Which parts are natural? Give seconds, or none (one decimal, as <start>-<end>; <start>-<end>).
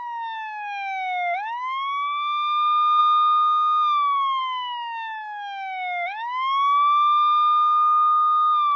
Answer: 0.0-8.8